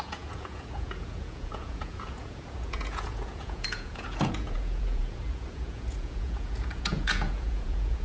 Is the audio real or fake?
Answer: fake